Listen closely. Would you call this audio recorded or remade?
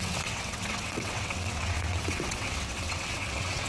remade